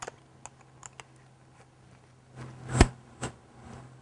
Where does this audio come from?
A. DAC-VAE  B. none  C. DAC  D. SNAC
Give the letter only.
B